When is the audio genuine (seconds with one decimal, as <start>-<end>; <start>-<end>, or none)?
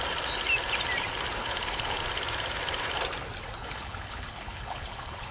0.0-1.4; 2.0-3.6